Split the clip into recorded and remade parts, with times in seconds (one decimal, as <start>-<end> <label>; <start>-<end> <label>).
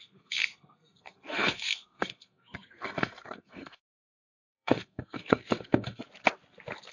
0.0-6.0 remade; 6.0-6.9 recorded